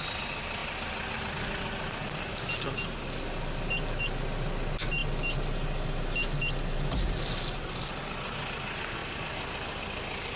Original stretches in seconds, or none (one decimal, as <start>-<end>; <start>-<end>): 0.0-10.4